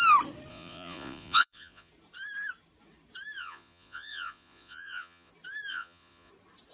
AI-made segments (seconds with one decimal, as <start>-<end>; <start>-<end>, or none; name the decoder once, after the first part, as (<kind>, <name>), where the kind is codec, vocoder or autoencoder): 0.5-1.9 (vocoder, Vocos); 3.4-5.3; 5.7-6.3